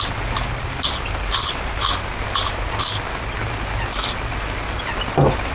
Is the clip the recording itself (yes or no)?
yes